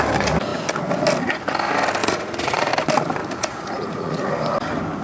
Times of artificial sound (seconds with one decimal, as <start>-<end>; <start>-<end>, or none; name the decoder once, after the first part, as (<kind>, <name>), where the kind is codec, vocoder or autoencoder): 2.0-2.7 (vocoder, Vocos); 3.2-4.3